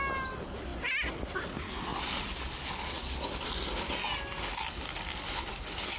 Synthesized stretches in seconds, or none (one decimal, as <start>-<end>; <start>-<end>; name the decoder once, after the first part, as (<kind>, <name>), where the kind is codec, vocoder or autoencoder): none

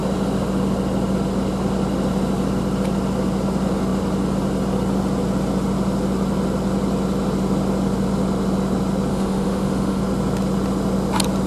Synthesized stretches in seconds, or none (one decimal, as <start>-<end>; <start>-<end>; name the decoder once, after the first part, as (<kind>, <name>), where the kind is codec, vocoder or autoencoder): 9.1-10.0 (autoencoder, DAC-VAE)

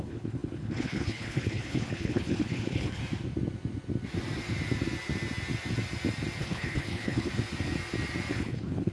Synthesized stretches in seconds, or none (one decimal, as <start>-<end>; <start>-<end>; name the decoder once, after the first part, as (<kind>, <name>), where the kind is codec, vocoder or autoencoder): 0.0-3.0 (codec, HILCodec); 6.4-7.3; 8.3-8.9

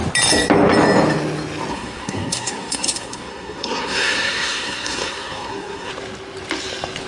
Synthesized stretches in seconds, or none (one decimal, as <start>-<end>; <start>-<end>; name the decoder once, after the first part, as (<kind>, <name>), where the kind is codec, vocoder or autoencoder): 1.7-5.9 (codec, SNAC)